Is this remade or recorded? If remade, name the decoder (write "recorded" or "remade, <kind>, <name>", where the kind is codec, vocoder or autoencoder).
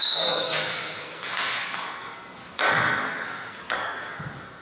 remade, codec, SNAC